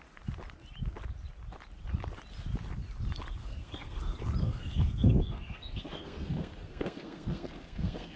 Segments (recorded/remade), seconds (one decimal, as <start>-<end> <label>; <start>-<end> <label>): 0.0-3.4 recorded; 3.4-4.0 remade; 4.0-4.4 recorded; 4.4-8.2 remade

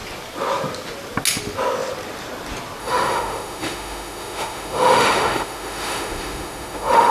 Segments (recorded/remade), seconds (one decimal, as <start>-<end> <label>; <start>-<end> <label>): 0.0-2.8 recorded; 2.8-7.1 remade

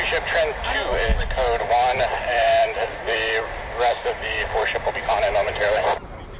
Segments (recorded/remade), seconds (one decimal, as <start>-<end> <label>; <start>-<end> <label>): 0.0-1.1 recorded; 1.1-4.9 remade; 4.9-6.4 recorded